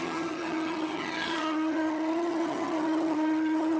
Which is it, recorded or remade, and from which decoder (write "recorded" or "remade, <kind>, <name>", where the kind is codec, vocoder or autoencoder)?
remade, vocoder, HiFi-GAN